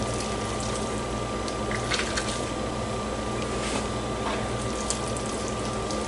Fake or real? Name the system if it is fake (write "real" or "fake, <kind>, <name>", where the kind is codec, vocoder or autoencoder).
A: real